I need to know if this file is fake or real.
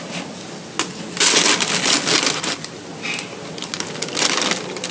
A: real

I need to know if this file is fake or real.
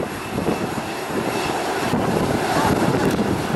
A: real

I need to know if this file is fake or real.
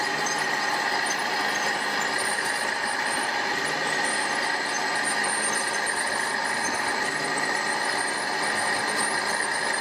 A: real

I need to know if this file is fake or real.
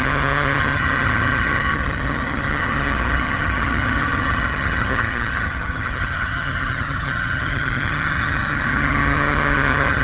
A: fake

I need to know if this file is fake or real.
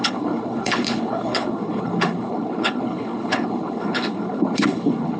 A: fake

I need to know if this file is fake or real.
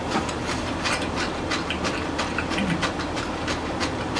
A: real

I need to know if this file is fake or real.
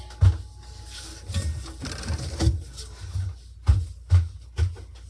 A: real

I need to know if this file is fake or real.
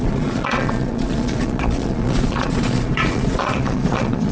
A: fake